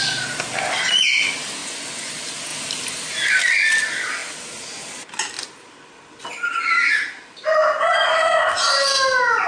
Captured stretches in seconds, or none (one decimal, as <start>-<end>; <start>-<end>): 0.0-1.6; 2.1-9.5

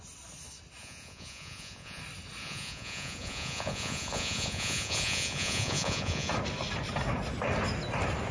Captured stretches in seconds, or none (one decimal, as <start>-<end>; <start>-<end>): 0.0-0.8; 2.0-2.4; 6.3-8.3

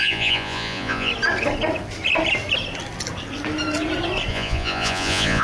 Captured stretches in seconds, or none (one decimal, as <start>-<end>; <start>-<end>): 1.1-4.3

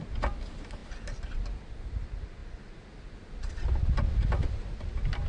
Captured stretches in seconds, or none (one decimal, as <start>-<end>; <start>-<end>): 0.0-5.3

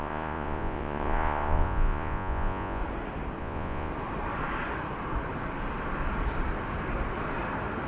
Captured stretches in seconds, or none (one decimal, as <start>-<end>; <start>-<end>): 2.8-3.4; 3.9-7.9

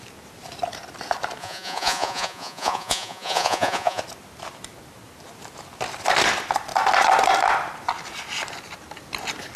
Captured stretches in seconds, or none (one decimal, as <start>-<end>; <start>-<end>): 0.0-1.4; 4.0-9.6